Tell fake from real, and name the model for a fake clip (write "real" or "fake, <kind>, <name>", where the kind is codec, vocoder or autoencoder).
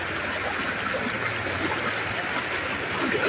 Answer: real